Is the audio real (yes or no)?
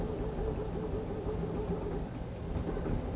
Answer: yes